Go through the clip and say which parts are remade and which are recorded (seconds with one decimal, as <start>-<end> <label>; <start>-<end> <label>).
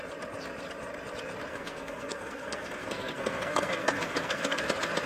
0.0-1.5 recorded; 1.5-4.6 remade; 4.6-5.1 recorded